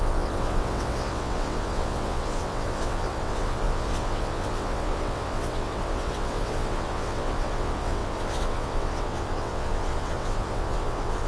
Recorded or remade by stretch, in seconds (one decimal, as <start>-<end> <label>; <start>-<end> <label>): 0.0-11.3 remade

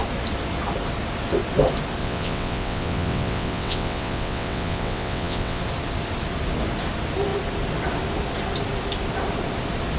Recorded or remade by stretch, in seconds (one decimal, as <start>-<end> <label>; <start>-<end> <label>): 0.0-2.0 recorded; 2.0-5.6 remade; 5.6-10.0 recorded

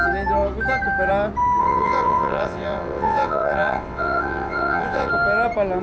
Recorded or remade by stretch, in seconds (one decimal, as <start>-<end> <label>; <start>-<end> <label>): 0.0-1.6 recorded; 1.6-5.1 remade; 5.1-5.8 recorded

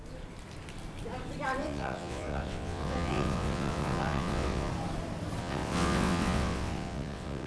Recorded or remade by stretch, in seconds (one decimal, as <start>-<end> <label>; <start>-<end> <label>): 0.0-1.6 recorded; 1.6-4.7 remade; 4.7-5.4 recorded; 5.4-7.5 remade